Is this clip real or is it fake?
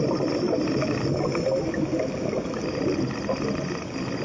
real